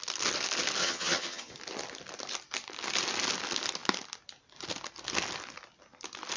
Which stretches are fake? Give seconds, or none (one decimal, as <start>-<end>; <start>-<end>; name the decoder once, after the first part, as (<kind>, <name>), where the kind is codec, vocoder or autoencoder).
0.8-1.5 (vocoder, HiFi-GAN)